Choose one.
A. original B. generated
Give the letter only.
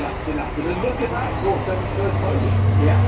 A